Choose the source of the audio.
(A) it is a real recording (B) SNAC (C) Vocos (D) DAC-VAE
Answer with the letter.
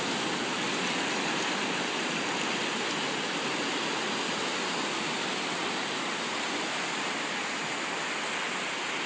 A